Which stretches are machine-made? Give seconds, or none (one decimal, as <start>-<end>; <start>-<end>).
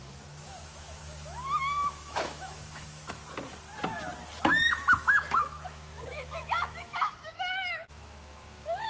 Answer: 0.0-3.2; 4.4-8.9